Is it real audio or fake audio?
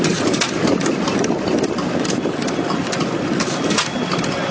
real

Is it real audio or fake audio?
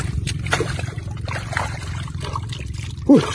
real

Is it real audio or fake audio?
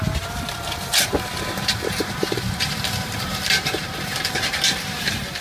fake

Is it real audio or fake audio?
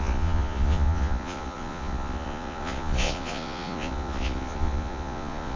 fake